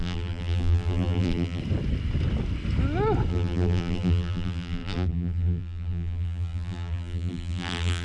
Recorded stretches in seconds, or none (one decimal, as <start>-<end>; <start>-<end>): 1.6-3.3

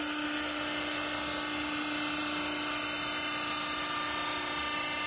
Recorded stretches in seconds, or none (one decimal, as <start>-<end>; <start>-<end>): 0.0-5.1

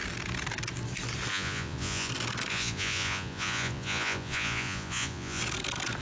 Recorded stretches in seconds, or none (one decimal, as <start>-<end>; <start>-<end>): 0.0-1.3; 2.1-2.5; 5.4-6.0

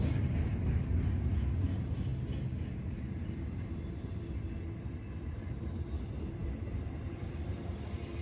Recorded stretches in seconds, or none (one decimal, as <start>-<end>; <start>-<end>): 0.0-8.2

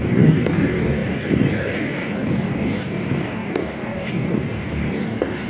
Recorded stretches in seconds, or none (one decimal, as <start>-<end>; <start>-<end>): none